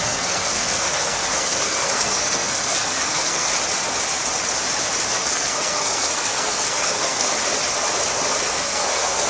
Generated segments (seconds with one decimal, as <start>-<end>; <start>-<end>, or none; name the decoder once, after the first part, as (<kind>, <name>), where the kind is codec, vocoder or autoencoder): 0.0-3.5 (codec, SNAC); 5.1-7.3; 8.5-9.3